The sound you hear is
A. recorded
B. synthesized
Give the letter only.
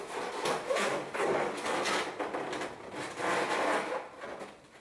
A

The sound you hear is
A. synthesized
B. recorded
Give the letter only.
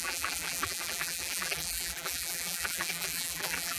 A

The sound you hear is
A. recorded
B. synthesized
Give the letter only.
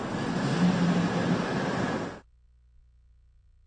A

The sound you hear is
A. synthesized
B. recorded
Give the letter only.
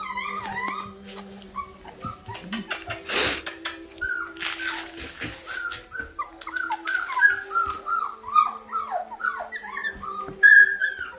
B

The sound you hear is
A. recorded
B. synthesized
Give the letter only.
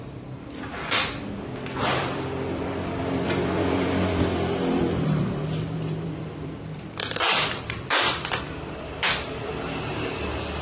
B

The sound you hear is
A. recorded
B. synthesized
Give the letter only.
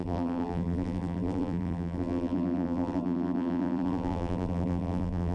B